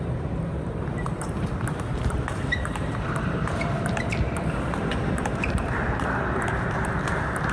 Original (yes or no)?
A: no